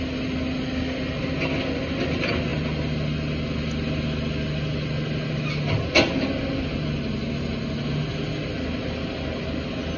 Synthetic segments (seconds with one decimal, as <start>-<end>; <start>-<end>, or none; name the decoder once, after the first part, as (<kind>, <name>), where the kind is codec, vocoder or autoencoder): none